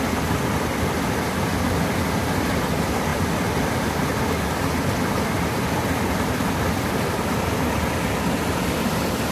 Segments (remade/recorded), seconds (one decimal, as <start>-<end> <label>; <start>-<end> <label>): 0.0-3.1 recorded; 3.1-4.2 remade; 4.2-9.3 recorded